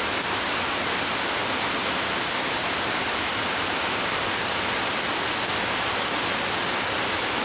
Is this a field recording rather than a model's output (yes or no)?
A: yes